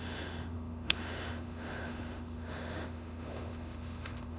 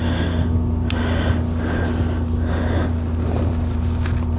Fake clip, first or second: first